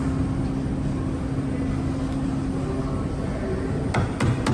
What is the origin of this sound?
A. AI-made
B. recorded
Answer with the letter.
B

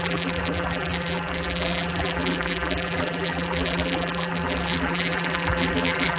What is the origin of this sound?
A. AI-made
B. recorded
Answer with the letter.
A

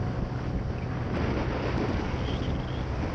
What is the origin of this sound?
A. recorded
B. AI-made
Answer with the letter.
A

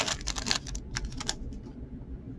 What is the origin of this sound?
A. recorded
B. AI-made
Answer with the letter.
A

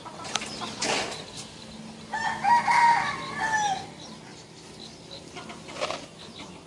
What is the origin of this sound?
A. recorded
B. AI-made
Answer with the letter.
A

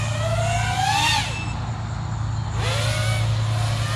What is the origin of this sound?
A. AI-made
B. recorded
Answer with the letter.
B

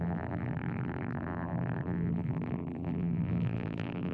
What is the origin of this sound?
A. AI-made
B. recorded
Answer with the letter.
A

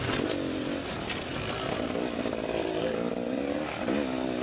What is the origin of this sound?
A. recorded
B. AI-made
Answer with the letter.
A